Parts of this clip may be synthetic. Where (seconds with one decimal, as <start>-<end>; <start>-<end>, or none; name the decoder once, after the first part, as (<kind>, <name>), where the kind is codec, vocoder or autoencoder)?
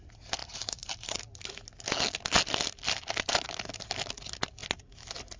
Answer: 0.4-1.2 (vocoder, BigVGAN v2)